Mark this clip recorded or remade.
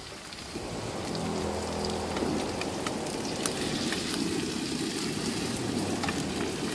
remade